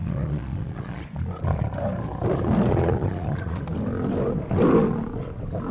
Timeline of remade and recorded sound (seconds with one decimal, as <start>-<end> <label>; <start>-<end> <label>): 0.0-1.6 remade; 1.6-2.7 recorded; 2.7-3.6 remade; 3.6-5.7 recorded

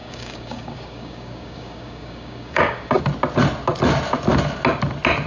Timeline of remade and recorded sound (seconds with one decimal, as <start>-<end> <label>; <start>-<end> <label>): 0.0-3.0 remade; 3.0-5.3 recorded